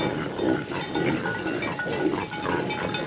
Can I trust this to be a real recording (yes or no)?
yes